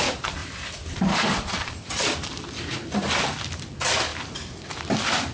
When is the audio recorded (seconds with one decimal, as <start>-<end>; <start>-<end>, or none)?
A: 4.1-4.7